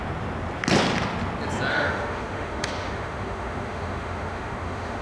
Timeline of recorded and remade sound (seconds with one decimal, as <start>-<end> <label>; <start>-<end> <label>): 0.0-1.7 recorded; 1.7-5.0 remade